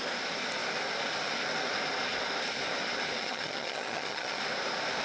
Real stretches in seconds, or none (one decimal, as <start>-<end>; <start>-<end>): 0.0-3.2; 4.4-5.0